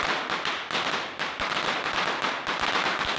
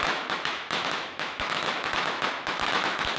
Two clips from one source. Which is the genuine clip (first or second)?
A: first